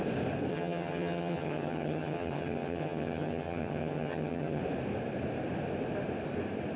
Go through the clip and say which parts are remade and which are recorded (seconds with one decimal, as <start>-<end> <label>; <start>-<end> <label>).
0.0-0.5 recorded; 0.5-4.6 remade; 4.6-6.8 recorded